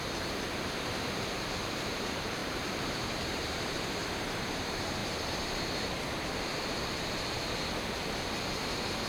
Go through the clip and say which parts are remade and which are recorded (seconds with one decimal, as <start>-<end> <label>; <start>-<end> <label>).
0.0-6.5 remade; 6.5-8.6 recorded; 8.6-9.1 remade